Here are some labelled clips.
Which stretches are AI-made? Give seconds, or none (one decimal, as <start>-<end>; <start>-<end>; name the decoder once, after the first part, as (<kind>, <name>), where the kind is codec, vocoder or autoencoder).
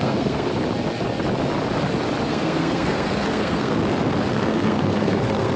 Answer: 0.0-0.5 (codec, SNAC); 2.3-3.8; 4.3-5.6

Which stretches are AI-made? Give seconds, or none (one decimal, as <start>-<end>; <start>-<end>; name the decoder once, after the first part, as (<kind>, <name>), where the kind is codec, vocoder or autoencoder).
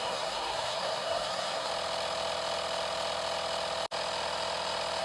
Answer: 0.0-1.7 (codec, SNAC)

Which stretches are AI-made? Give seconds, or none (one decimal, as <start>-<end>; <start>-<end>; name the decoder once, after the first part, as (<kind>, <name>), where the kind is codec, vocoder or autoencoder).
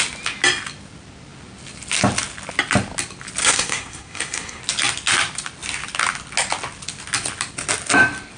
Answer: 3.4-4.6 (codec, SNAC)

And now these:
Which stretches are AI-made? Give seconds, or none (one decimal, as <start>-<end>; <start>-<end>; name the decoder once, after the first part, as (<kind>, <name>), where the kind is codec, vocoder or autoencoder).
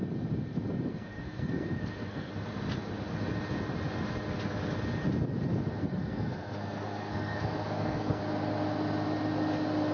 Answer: 0.9-2.3 (codec, SNAC); 5.8-8.2